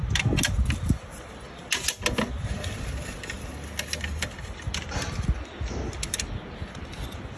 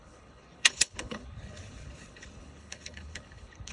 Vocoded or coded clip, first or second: second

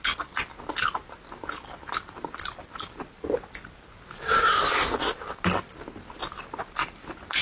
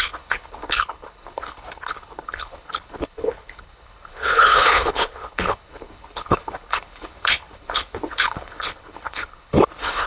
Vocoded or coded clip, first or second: second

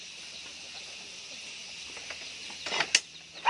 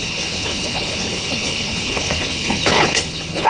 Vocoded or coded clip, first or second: second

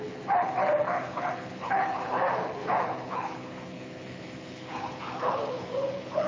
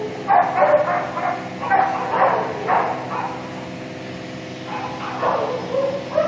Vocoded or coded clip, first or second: first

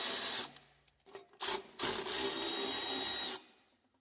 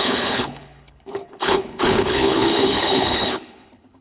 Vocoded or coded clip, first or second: second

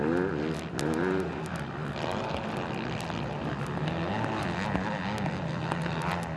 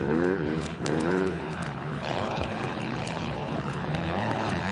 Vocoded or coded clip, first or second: second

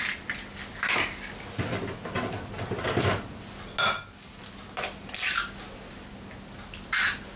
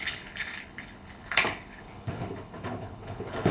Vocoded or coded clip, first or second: second